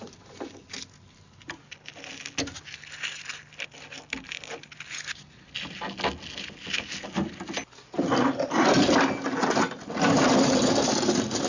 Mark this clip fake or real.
real